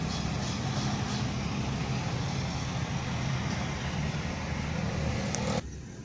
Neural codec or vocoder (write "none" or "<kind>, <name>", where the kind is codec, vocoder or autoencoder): none